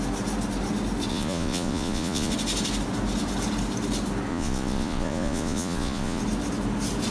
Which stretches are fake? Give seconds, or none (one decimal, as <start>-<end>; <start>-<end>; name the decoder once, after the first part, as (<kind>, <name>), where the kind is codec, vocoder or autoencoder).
1.1-2.3 (vocoder, Vocos); 4.3-6.2